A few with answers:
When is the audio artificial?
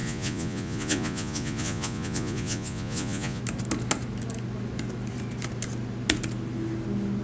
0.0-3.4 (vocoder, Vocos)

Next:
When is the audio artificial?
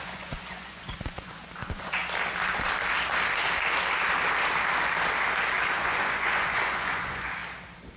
0.0-2.0 (vocoder, Vocos); 5.8-7.4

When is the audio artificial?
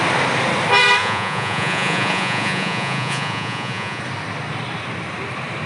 1.0-4.0 (vocoder, Vocos)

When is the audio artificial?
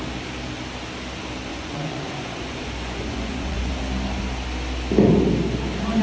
1.5-3.7 (vocoder, Vocos)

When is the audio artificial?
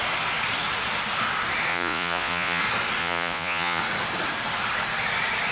1.7-2.6 (vocoder, Vocos); 3.0-3.8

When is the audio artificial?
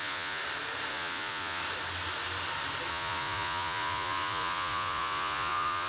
0.0-0.4 (vocoder, Vocos); 0.9-1.6; 2.9-5.9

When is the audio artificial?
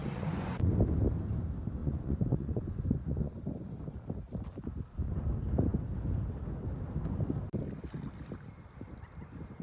0.0-0.7 (vocoder, Vocos); 1.8-3.3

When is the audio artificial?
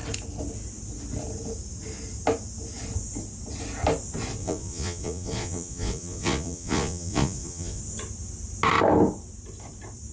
4.4-7.8 (vocoder, Vocos)